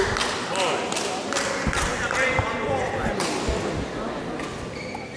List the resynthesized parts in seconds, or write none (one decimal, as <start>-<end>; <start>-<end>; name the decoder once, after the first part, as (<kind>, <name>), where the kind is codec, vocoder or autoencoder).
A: none